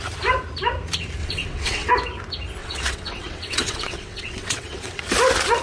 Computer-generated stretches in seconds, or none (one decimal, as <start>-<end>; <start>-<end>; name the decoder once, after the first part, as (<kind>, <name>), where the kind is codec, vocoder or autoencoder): 1.2-1.9 (vocoder, WaveNeXt); 2.6-5.0